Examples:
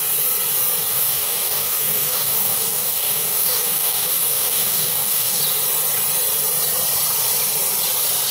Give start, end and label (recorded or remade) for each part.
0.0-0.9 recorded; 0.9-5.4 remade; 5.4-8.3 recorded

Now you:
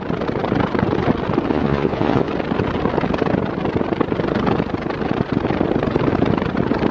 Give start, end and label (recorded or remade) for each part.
0.0-1.5 recorded; 1.5-2.3 remade; 2.3-6.9 recorded